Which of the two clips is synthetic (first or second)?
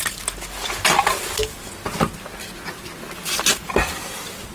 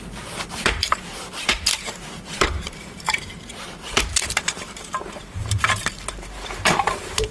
second